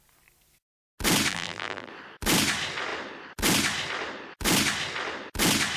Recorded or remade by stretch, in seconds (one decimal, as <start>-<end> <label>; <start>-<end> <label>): 0.0-1.3 recorded; 1.3-1.9 remade; 1.9-5.8 recorded